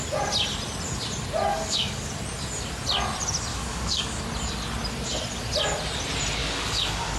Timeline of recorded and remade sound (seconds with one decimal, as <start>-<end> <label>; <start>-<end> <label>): 0.0-1.5 recorded; 1.5-2.1 remade; 2.1-3.5 recorded; 3.5-4.2 remade; 4.2-6.4 recorded; 6.4-7.2 remade